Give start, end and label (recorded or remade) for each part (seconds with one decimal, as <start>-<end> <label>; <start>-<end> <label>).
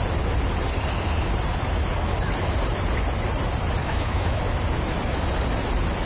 0.0-3.8 recorded; 3.8-4.4 remade; 4.4-6.1 recorded